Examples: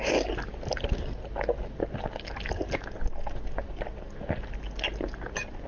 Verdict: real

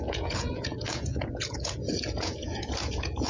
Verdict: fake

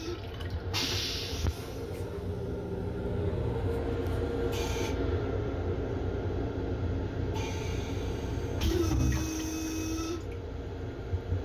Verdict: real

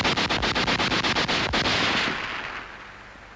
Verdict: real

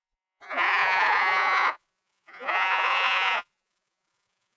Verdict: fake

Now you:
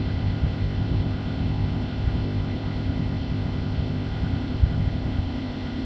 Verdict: fake